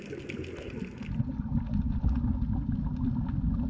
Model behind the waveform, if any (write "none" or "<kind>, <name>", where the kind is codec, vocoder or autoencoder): none